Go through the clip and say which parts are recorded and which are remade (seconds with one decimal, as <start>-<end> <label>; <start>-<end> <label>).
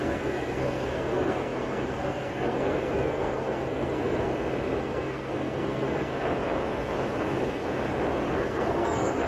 0.0-4.3 remade; 4.3-4.8 recorded; 4.8-6.1 remade; 6.1-8.3 recorded; 8.3-9.3 remade